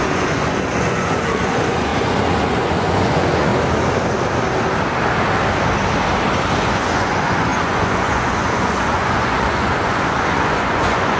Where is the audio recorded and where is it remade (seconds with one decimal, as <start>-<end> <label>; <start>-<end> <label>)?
0.0-3.5 remade; 3.5-6.6 recorded; 6.6-11.2 remade